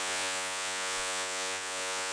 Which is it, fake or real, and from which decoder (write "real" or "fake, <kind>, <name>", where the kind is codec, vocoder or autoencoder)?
fake, vocoder, Vocos